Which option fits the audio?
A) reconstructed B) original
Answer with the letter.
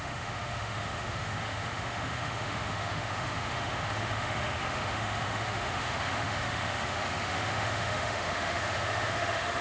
A